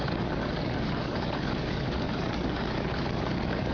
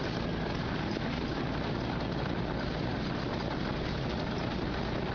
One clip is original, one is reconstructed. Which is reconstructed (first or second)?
first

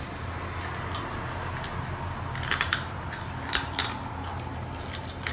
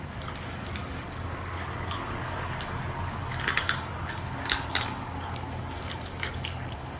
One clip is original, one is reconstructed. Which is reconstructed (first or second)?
second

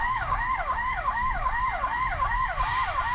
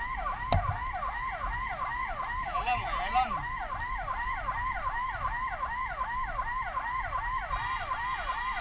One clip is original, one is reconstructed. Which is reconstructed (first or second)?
first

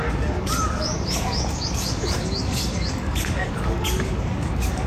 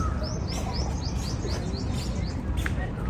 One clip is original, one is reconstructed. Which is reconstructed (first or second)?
first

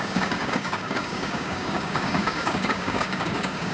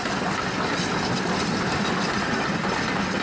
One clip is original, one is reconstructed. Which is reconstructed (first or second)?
first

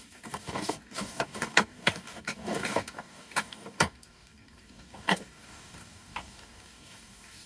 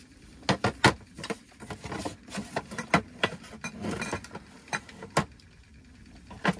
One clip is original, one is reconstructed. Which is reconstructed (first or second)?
first